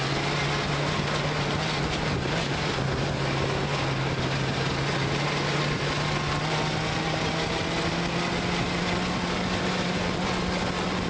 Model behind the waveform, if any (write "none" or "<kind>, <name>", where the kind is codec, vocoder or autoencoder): none